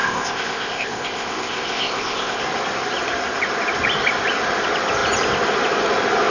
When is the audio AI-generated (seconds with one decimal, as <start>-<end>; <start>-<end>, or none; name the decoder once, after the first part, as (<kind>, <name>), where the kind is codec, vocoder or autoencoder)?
0.0-2.4 (codec, ZipCodec)